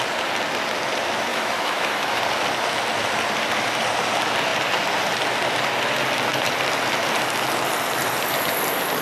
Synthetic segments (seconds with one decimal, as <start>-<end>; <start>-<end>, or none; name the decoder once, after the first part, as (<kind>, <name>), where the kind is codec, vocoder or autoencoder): 1.3-2.2 (autoencoder, DAC-VAE)